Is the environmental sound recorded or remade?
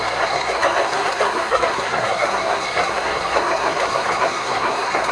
remade